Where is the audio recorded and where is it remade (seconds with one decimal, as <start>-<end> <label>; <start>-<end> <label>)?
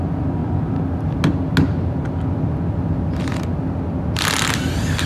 0.0-5.1 recorded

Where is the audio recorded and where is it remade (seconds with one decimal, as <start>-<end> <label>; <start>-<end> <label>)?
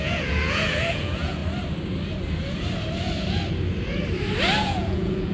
0.0-1.4 remade; 1.4-4.6 recorded; 4.6-5.3 remade